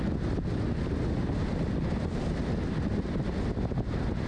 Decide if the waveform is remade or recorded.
recorded